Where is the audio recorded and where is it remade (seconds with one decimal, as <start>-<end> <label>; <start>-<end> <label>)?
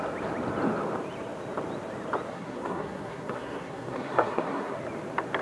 0.0-2.3 recorded; 2.3-4.8 remade; 4.8-5.4 recorded